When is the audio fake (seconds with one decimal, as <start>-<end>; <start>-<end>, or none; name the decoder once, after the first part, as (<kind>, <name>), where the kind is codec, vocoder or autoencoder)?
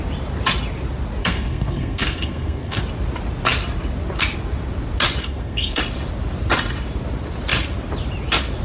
1.2-2.8 (codec, SNAC); 5.2-5.8